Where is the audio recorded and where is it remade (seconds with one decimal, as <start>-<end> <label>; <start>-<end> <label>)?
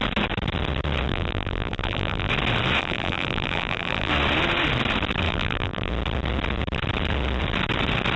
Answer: 0.0-1.1 recorded; 1.1-2.3 remade; 2.3-2.8 recorded; 2.8-4.1 remade; 4.1-5.3 recorded; 5.3-5.9 remade; 5.9-8.2 recorded